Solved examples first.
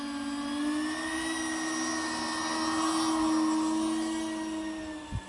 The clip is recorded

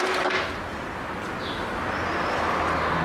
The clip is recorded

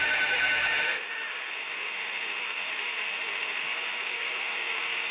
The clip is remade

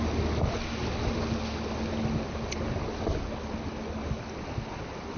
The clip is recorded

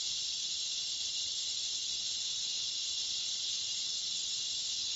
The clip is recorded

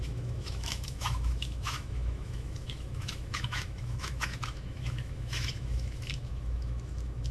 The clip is remade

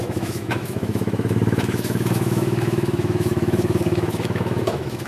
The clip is remade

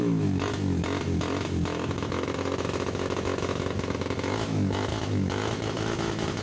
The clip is remade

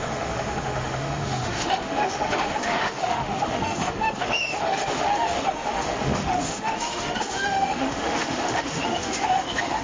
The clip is remade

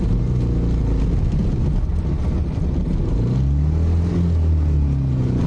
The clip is recorded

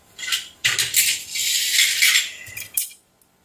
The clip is recorded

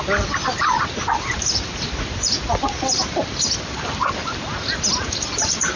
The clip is recorded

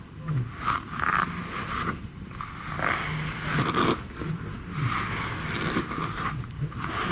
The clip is recorded